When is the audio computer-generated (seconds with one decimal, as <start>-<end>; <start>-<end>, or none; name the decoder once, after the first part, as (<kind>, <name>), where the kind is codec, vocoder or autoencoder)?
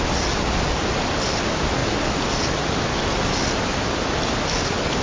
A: none